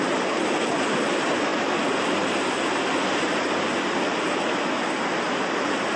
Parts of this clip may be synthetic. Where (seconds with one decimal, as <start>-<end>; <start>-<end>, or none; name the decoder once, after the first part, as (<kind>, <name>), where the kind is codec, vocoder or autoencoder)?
none